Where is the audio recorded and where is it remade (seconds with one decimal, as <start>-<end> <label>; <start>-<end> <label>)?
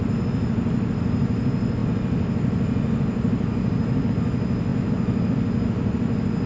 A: 0.0-6.5 recorded